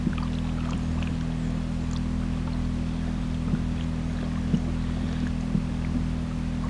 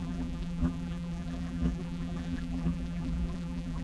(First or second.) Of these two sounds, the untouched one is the first